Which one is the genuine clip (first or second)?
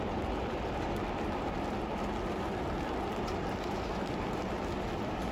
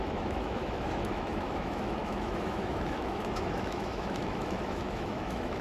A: first